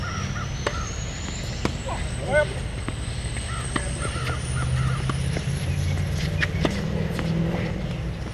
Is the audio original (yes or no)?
yes